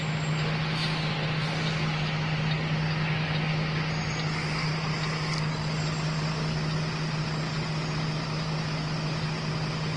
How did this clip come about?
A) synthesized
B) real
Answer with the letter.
B